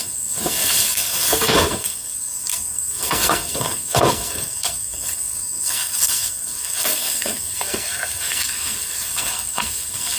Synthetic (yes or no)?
yes